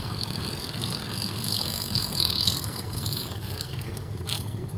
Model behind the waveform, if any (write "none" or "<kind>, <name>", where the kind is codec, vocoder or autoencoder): codec, SNAC